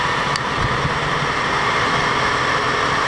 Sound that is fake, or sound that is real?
real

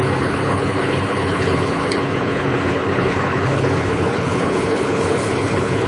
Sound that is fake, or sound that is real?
fake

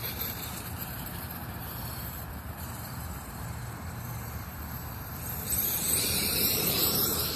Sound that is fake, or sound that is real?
fake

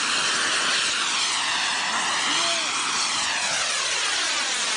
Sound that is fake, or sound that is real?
real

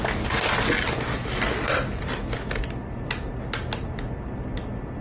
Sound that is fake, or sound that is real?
real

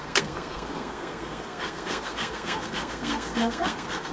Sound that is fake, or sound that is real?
fake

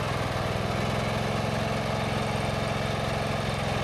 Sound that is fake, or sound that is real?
real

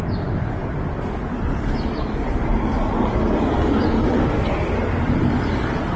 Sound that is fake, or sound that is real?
real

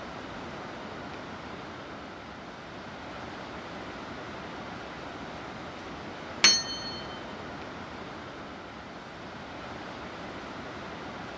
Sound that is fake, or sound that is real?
real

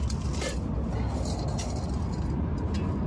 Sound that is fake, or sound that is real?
real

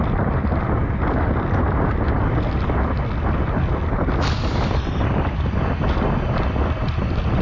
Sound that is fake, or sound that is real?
real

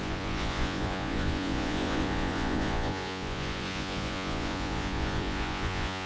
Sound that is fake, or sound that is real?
fake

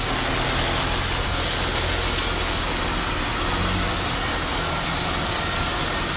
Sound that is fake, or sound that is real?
real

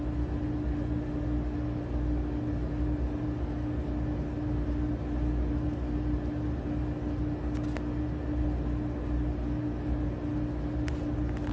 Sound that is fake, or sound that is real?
real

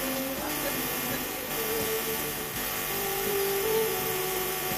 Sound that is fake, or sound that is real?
fake